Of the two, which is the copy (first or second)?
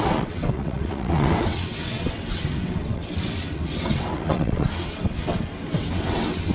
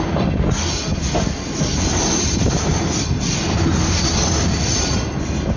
first